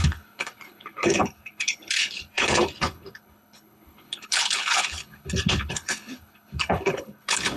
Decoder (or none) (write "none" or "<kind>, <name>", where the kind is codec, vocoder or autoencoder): codec, HILCodec